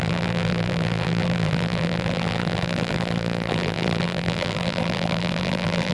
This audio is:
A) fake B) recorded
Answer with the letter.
A